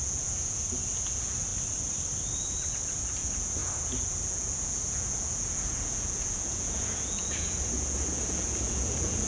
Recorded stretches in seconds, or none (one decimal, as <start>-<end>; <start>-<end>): 1.5-2.8